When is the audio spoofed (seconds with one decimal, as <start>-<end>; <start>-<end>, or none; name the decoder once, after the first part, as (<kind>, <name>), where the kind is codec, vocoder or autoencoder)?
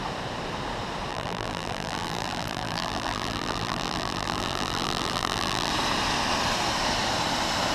1.1-5.7 (vocoder, BigVGAN v2)